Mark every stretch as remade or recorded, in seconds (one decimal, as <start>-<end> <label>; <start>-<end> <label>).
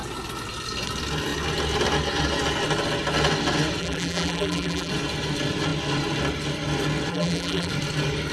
0.0-3.8 recorded; 3.8-4.9 remade; 4.9-7.1 recorded; 7.1-7.7 remade; 7.7-8.3 recorded